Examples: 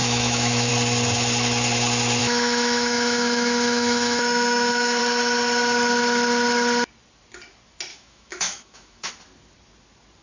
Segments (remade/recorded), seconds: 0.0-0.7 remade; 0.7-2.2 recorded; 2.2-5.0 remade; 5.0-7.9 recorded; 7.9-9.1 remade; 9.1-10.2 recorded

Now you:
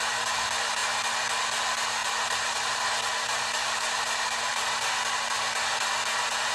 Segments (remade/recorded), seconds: 0.0-2.0 recorded; 2.0-2.8 remade; 2.8-3.6 recorded; 3.6-5.0 remade; 5.0-6.5 recorded

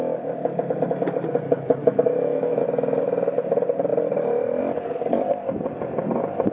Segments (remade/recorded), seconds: 0.0-1.8 recorded; 1.8-2.6 remade; 2.6-6.5 recorded